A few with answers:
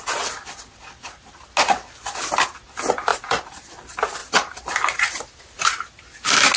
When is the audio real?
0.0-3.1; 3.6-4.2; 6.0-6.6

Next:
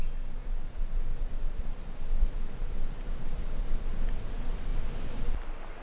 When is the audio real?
0.0-0.4; 3.6-5.8

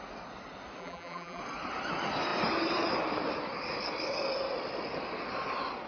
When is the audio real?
0.0-0.8; 1.4-5.9

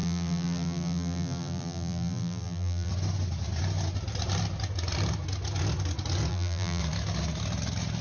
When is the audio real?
2.9-6.3; 6.8-8.0

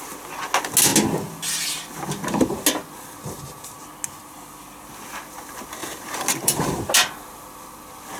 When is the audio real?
0.0-5.8; 6.8-8.2

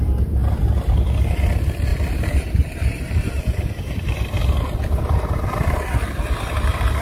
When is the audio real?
0.0-1.9; 4.4-7.0